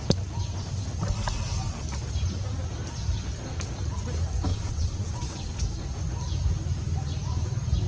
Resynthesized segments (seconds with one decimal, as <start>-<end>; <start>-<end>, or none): 4.5-5.5